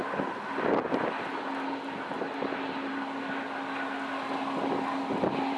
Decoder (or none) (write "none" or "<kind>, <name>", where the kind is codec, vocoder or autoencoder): none